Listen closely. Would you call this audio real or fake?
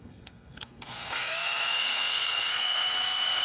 fake